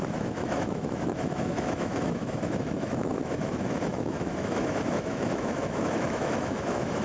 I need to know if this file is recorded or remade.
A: remade